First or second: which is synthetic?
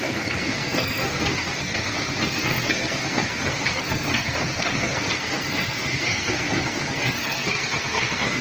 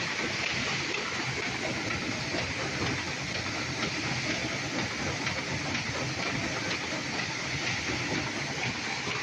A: first